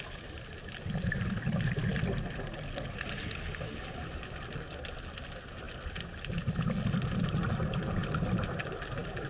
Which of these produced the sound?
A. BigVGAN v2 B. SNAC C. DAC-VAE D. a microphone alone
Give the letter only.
D